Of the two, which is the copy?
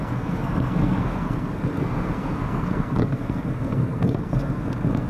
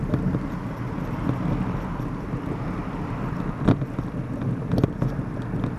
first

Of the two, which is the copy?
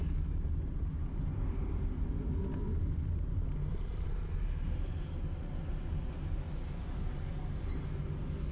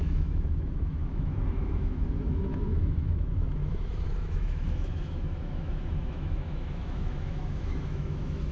second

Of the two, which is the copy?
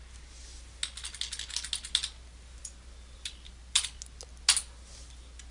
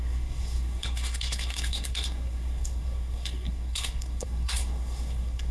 second